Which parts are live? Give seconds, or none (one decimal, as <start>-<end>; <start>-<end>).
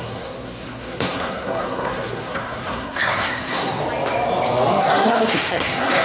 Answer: 3.8-4.8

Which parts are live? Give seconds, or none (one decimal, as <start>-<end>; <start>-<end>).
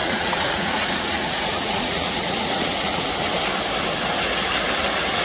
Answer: 3.1-5.2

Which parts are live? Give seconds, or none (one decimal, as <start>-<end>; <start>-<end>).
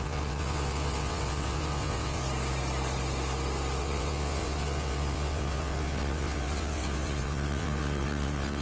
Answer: 2.2-3.8